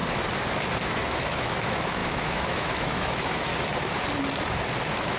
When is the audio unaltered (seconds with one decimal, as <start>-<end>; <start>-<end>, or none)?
0.0-0.8; 3.5-4.8